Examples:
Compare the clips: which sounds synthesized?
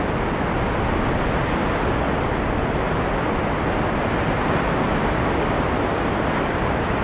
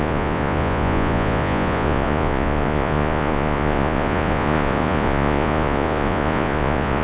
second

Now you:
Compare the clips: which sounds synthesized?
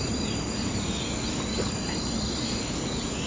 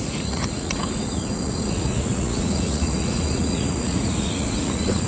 second